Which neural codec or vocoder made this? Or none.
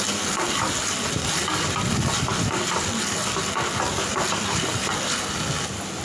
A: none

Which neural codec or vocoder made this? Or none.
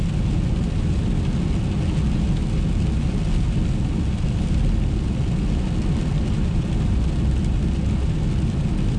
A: none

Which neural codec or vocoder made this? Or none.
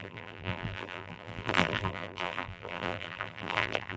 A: vocoder, BigVGAN v2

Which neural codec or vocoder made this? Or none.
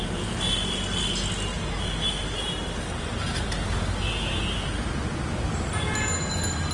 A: none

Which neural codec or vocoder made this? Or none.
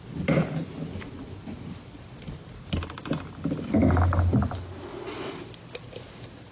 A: none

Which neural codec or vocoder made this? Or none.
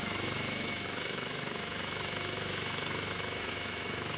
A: autoencoder, DAC-VAE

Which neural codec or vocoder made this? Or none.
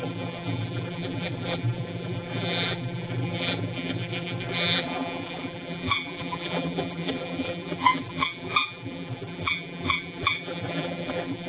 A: vocoder, BigVGAN v2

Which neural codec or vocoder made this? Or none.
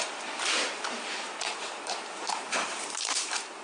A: vocoder, BigVGAN v2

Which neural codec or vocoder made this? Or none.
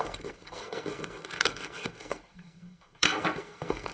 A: codec, SNAC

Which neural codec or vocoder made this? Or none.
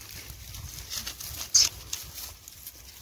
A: none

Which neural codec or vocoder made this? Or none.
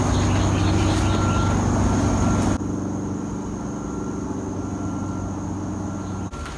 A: none